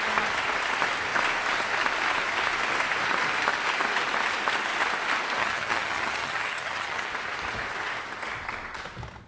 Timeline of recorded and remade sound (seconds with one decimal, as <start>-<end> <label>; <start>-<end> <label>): 0.0-5.4 recorded; 5.4-7.1 remade; 7.1-9.3 recorded